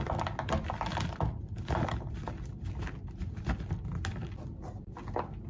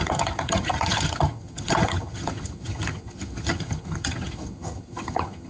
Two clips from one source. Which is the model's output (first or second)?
second